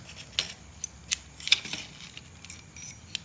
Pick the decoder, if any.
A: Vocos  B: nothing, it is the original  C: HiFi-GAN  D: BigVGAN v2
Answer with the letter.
B